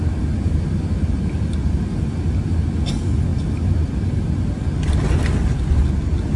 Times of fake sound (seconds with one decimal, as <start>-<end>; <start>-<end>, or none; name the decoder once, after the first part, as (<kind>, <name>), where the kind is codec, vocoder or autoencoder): none